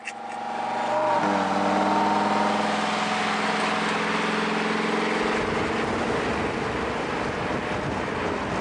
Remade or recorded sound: recorded